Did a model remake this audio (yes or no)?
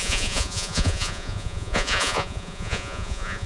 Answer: yes